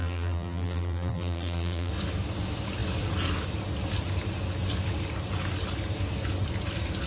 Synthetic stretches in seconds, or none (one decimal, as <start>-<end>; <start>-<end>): 0.0-1.9